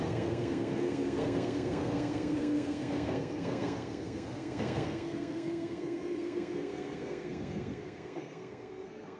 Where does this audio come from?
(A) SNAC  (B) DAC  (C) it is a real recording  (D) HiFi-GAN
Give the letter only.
A